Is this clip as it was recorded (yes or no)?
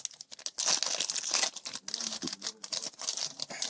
yes